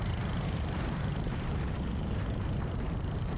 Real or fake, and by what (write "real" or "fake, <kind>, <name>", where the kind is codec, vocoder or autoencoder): fake, vocoder, BigVGAN v2